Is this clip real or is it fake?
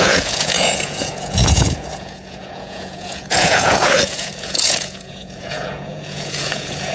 fake